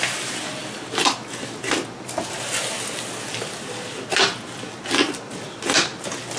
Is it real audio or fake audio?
real